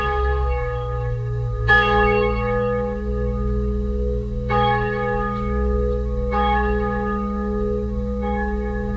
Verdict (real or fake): fake